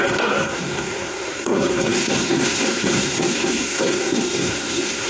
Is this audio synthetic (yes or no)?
yes